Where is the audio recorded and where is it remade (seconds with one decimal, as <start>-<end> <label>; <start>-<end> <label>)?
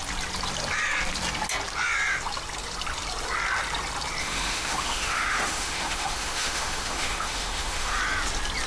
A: 0.0-4.2 recorded; 4.2-8.0 remade; 8.0-8.7 recorded